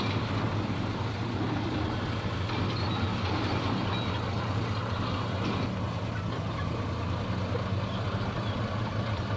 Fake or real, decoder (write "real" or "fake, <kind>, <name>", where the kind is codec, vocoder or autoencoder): real